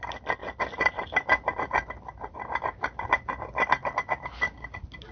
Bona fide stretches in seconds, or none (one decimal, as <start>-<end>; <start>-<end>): 0.0-5.1